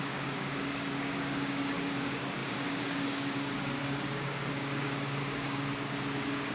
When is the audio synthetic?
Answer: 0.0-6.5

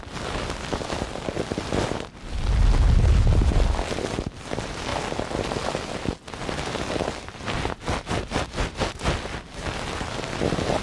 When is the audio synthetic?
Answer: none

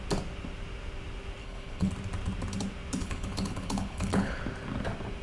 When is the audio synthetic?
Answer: 1.4-1.9; 3.0-4.4

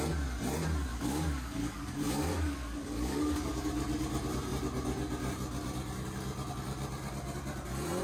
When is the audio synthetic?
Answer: 0.9-3.7

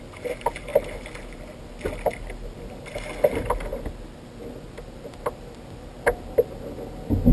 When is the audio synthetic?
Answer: none

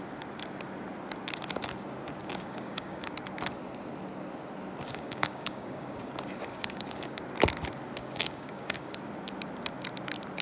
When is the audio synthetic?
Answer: 2.2-3.1; 4.9-6.1; 6.5-7.2; 8.0-9.0

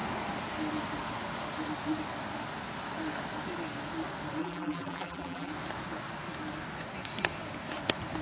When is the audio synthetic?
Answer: 4.4-5.5